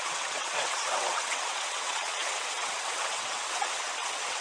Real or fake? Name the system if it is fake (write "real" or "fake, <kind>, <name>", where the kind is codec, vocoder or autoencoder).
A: fake, vocoder, WaveNeXt